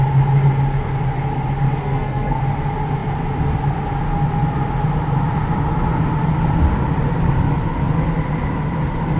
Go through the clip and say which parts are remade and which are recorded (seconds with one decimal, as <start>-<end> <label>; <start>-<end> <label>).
0.0-1.8 recorded; 1.8-2.4 remade; 2.4-9.2 recorded